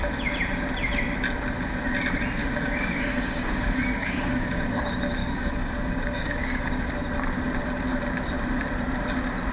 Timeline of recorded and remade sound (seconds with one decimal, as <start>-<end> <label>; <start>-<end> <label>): 0.0-2.4 recorded; 2.4-4.8 remade; 4.8-5.2 recorded; 5.2-6.7 remade; 6.7-9.5 recorded